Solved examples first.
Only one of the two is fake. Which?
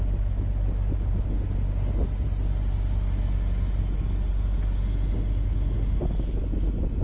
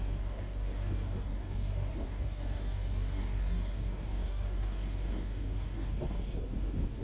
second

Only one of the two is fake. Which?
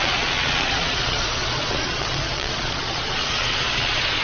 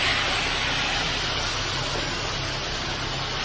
first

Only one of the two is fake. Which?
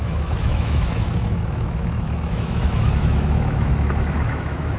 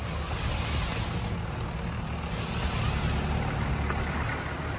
first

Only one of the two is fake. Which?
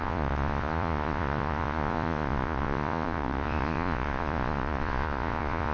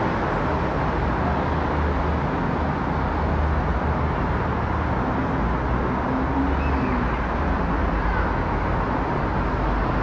first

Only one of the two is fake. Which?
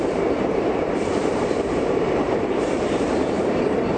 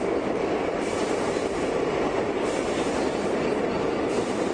first